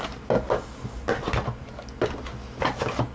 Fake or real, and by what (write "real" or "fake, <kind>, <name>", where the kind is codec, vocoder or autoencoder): real